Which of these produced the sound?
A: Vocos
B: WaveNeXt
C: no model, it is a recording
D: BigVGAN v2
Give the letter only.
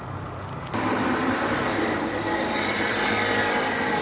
C